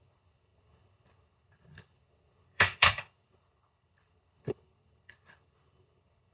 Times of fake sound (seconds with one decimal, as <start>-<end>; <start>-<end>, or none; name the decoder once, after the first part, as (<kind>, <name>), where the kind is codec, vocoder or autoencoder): 0.0-6.3 (codec, HILCodec)